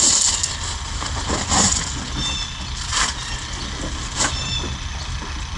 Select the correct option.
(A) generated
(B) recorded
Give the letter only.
B